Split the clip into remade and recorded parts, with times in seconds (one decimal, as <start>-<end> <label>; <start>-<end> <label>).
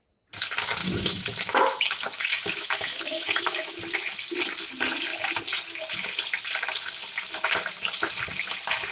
0.0-0.8 recorded; 0.8-3.8 remade; 3.8-8.9 recorded